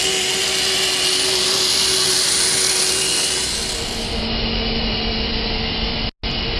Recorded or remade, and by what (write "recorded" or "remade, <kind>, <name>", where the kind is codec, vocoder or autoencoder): recorded